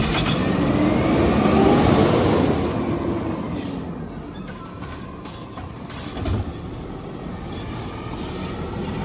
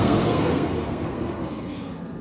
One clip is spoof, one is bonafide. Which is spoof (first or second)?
second